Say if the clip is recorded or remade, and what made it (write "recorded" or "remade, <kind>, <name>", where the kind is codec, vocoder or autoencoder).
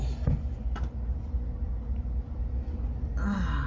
recorded